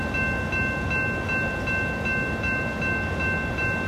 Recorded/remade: recorded